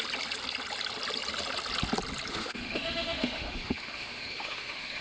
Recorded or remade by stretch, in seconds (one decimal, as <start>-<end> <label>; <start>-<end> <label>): 0.0-2.3 recorded; 2.3-5.0 remade